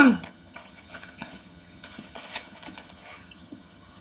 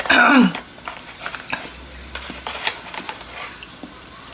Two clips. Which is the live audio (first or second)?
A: second